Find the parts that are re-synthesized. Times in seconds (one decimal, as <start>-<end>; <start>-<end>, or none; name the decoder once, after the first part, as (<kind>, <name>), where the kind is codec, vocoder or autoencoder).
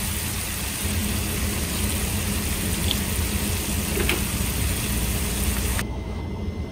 5.7-6.2 (autoencoder, DAC-VAE)